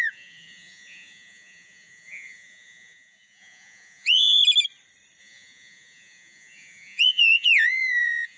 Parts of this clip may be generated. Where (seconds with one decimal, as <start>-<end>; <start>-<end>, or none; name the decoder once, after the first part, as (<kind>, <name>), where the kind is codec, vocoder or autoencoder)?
0.0-4.4 (vocoder, Vocos); 5.2-8.4